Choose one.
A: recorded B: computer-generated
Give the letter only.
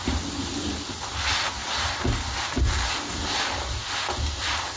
A